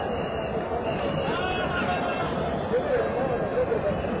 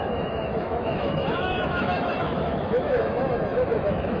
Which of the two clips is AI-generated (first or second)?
second